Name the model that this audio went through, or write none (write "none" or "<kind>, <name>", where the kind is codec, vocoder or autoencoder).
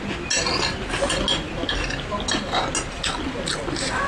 none